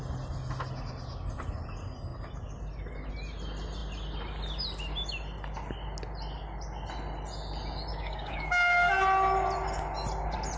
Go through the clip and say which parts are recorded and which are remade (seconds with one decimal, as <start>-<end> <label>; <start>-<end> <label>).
0.0-7.9 recorded; 7.9-8.9 remade; 8.9-10.6 recorded